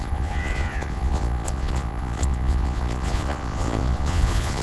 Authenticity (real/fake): fake